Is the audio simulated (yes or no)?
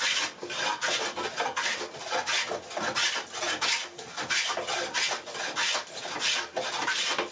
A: no